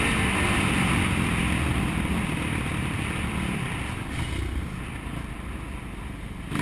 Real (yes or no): yes